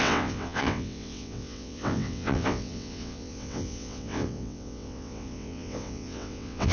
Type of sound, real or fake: fake